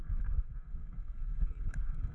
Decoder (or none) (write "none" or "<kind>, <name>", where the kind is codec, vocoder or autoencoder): codec, SNAC